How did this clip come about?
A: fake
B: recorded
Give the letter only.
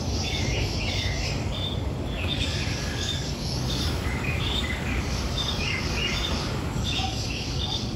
A